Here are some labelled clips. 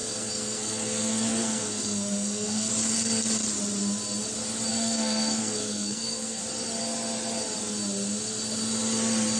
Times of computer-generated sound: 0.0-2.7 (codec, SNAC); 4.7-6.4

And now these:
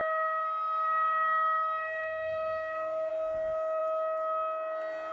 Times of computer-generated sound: 0.0-3.1 (codec, SNAC)

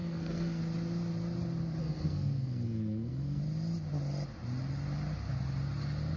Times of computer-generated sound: 0.0-0.6 (codec, SNAC); 1.8-3.4